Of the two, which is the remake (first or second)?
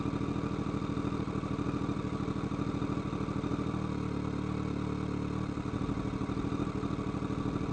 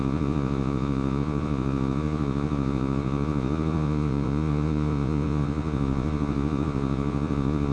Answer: second